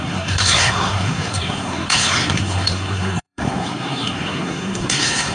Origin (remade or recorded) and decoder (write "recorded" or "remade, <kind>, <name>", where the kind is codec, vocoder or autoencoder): remade, codec, SNAC